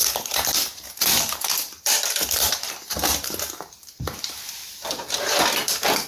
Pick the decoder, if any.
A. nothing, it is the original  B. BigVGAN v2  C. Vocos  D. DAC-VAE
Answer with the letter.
B